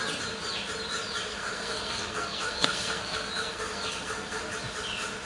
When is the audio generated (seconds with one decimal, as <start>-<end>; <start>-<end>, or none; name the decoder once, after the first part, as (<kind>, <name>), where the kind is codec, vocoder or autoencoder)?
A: 1.3-4.5 (codec, SNAC)